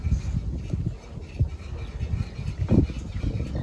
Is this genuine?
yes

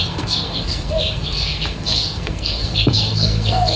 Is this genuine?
no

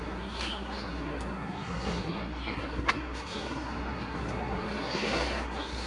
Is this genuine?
no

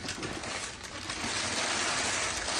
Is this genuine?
yes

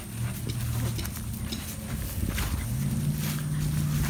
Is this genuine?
yes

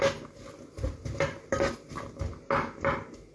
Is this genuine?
yes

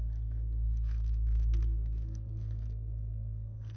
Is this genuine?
no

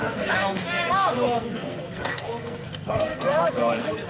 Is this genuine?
no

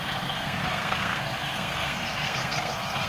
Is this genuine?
no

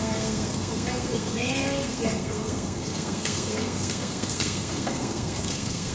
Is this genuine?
no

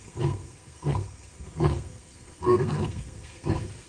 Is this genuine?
no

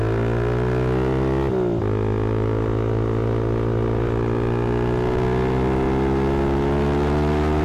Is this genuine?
yes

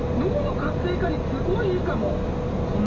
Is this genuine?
yes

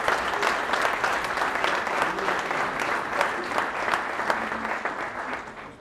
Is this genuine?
yes